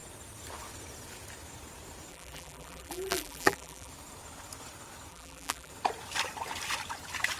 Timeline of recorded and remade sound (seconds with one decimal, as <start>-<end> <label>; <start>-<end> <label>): 0.0-2.1 recorded; 2.1-3.9 remade; 3.9-5.1 recorded; 5.1-5.7 remade; 5.7-7.4 recorded